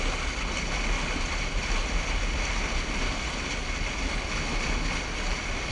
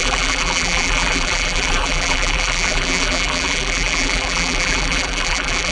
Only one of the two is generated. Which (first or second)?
second